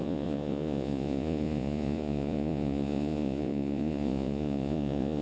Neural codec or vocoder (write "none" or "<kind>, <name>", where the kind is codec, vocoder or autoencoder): vocoder, Vocos